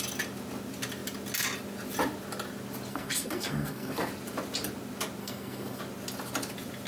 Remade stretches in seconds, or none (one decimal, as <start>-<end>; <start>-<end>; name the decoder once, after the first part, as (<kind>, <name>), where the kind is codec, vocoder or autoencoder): 2.9-4.1 (codec, SNAC); 5.2-5.8